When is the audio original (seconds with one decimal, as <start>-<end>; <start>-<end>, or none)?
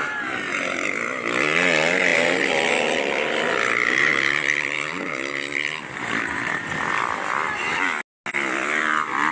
0.0-9.3